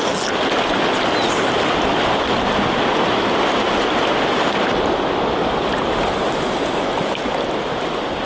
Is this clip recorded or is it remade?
recorded